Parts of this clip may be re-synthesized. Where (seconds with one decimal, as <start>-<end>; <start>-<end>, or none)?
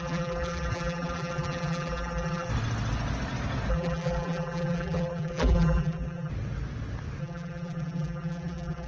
0.0-2.5; 3.7-6.3; 7.2-8.9